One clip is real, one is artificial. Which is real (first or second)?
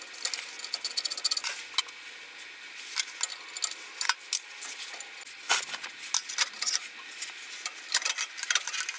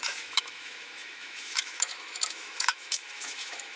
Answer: first